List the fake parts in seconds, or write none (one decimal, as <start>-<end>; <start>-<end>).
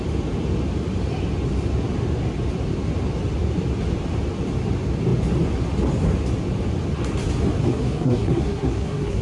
7.7-9.2